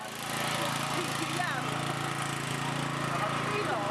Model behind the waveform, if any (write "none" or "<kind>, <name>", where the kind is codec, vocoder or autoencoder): none